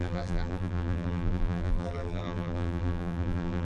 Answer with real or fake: fake